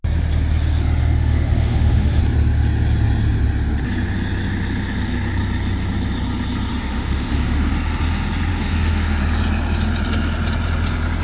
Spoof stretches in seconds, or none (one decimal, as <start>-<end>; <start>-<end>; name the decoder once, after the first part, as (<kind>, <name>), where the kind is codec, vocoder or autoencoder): 1.0-2.2 (autoencoder, DAC-VAE); 6.7-7.7; 8.5-9.2